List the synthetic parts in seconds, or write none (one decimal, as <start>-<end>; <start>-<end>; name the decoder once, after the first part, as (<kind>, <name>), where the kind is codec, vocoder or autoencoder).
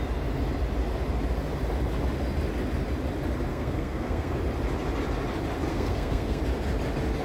3.5-4.3 (codec, SNAC); 5.7-6.4